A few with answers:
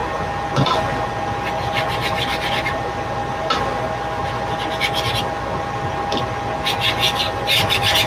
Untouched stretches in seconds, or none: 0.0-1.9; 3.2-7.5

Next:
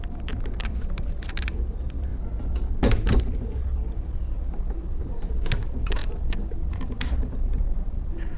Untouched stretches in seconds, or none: 2.1-2.7